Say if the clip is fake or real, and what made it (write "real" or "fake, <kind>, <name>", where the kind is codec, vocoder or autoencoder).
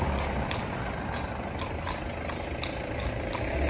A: real